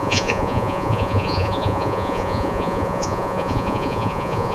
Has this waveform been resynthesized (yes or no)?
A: yes